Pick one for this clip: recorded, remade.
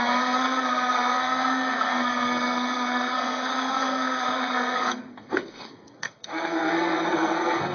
remade